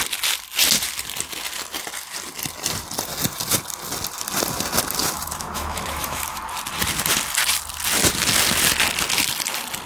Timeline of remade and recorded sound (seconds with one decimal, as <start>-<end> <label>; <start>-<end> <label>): 0.0-5.0 recorded; 5.0-6.4 remade; 6.4-9.9 recorded